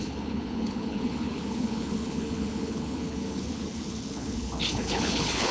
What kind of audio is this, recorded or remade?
remade